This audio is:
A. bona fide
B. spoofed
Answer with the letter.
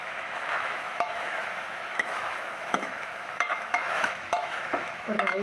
B